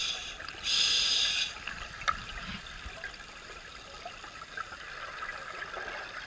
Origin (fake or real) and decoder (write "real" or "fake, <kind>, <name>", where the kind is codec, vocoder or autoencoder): real